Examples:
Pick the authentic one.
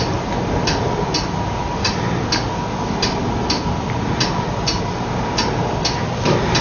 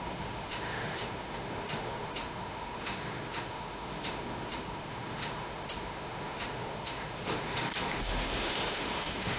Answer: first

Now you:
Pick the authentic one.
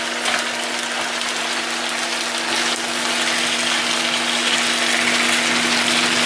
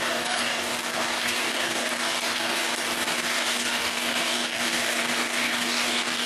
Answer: first